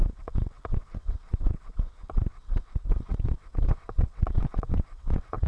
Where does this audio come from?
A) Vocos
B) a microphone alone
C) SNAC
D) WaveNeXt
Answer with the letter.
D